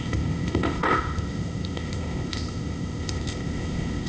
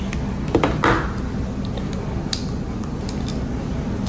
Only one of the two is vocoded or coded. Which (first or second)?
first